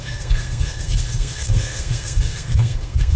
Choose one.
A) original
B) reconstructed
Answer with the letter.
B